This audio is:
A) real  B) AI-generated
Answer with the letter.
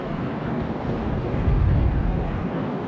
B